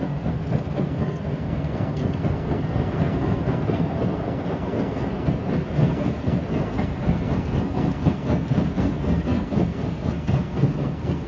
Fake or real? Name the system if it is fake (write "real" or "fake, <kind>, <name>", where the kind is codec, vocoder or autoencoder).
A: fake, codec, SNAC